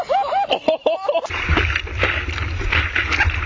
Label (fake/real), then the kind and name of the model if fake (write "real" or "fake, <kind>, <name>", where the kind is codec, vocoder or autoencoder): real